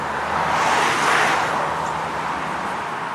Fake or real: real